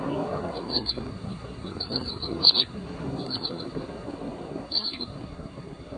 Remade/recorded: remade